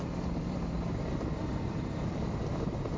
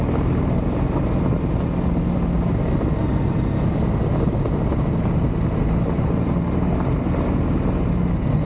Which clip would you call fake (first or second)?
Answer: first